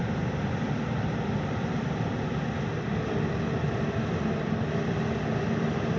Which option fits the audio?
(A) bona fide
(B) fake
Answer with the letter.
A